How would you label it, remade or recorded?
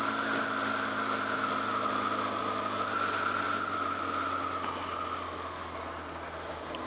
recorded